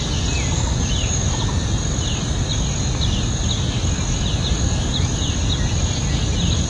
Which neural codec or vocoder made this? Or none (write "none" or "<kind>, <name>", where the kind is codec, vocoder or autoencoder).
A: none